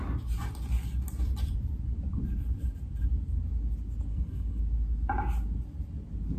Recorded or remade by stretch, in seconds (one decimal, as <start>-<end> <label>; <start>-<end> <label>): 0.0-4.1 recorded; 4.1-4.6 remade; 4.6-6.4 recorded